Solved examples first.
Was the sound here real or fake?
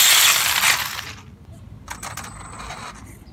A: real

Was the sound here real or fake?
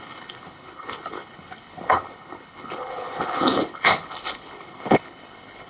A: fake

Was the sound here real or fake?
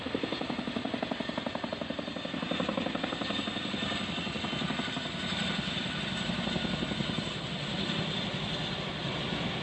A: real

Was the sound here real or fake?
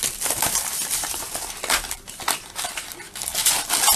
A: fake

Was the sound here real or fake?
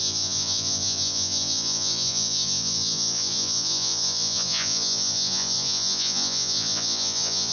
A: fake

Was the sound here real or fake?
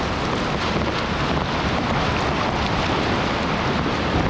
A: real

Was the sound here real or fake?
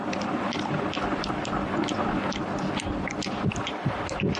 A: real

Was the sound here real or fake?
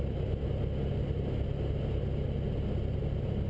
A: real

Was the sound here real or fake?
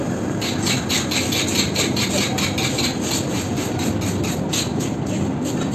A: real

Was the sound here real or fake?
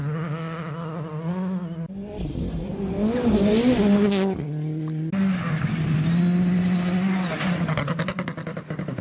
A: real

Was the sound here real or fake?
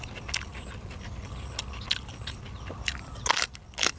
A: real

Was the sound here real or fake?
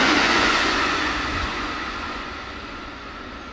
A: fake